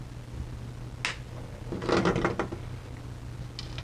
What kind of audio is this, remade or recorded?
recorded